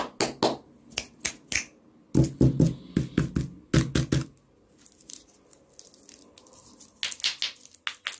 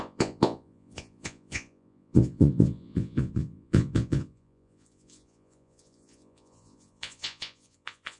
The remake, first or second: second